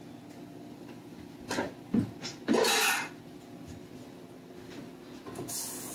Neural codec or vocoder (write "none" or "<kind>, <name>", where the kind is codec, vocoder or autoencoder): none